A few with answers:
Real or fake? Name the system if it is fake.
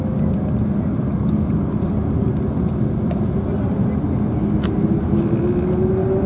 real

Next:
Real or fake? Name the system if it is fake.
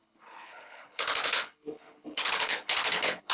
fake, codec, HILCodec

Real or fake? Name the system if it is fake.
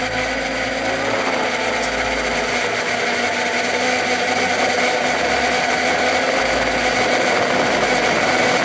real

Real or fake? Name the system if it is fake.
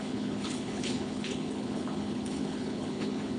fake, codec, HILCodec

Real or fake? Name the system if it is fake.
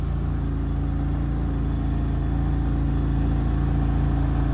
real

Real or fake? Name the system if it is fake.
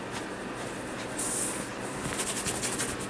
real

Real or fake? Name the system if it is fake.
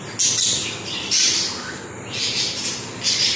real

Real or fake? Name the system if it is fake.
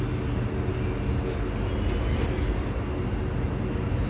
real